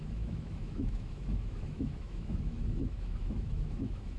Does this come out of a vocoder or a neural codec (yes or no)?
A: yes